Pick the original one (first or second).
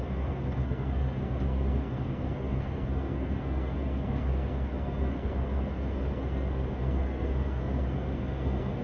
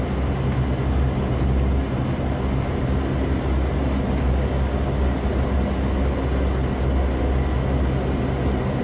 second